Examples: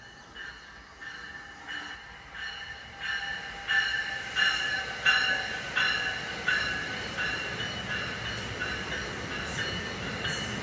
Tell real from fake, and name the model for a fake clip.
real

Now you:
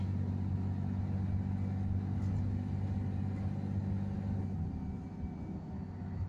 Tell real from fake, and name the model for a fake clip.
real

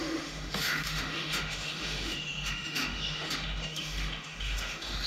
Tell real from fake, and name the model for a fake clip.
fake, autoencoder, DAC-VAE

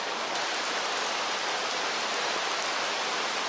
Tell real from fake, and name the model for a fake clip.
fake, vocoder, BigVGAN v2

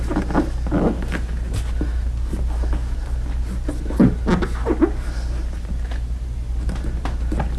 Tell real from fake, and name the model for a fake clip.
real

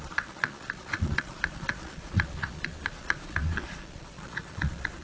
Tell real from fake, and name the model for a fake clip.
fake, vocoder, Vocos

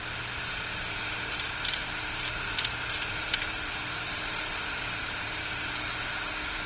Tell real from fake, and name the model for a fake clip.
fake, vocoder, BigVGAN v2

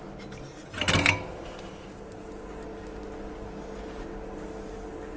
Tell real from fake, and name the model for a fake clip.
real